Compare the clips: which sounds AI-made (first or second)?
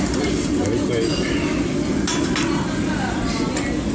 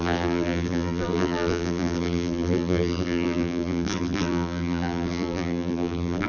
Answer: second